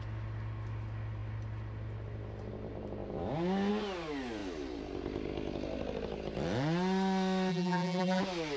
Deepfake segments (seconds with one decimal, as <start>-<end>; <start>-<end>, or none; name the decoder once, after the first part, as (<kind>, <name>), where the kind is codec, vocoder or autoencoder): 7.5-8.2 (vocoder, BigVGAN v2)